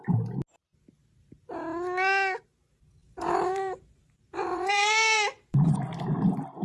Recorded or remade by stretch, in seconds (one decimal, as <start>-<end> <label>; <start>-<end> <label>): 0.0-3.0 recorded; 3.0-5.7 remade; 5.7-6.6 recorded